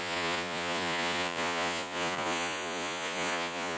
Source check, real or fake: fake